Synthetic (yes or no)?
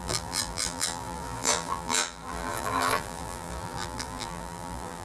yes